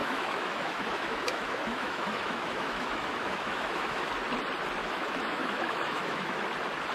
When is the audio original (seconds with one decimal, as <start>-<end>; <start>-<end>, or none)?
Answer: 4.1-4.8; 6.4-6.9